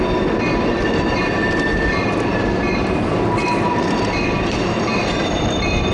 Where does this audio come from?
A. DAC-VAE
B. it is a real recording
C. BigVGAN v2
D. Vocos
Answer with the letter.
B